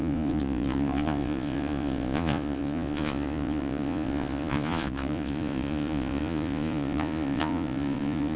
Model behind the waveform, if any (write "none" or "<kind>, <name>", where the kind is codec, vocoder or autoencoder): vocoder, Vocos